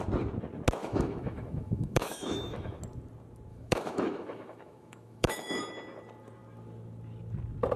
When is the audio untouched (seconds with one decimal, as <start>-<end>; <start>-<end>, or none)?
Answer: 0.0-0.8; 2.8-3.5; 5.6-7.8